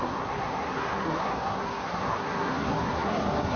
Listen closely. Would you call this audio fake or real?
fake